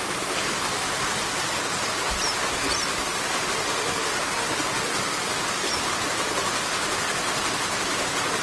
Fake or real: real